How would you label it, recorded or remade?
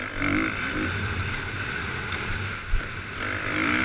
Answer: recorded